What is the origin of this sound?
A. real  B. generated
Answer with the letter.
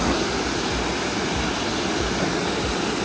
A